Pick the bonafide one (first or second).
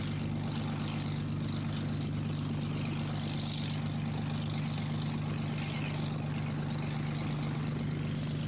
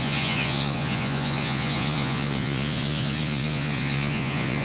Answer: first